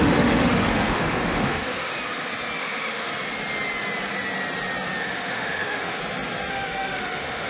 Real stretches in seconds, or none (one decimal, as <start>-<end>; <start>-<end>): 1.9-2.6; 3.1-5.0; 6.0-6.5